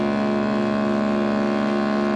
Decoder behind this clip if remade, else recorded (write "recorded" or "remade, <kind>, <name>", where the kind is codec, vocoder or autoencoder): recorded